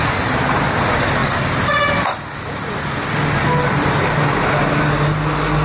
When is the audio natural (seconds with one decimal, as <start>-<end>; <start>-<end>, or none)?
0.0-5.6